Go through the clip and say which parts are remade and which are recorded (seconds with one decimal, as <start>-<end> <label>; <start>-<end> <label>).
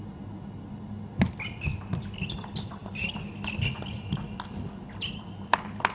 0.0-5.9 recorded